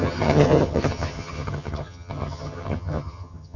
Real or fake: fake